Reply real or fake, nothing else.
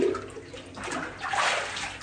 real